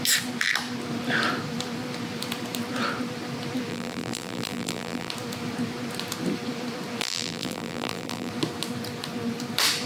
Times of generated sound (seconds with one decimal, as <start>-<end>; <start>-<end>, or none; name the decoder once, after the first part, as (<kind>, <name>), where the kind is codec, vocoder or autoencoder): 3.7-5.1 (vocoder, BigVGAN v2); 7.0-8.3

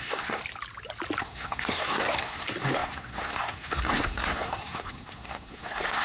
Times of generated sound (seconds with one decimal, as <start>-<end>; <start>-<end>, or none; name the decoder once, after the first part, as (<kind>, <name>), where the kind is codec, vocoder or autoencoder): 0.0-0.4 (codec, SNAC); 1.2-6.0